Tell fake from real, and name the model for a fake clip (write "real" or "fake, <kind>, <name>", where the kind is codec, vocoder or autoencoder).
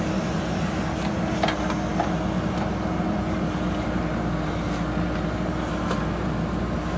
real